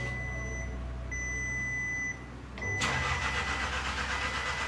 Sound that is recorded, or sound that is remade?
recorded